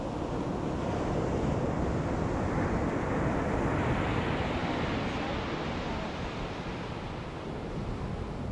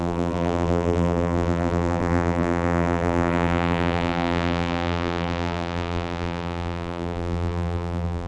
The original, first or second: first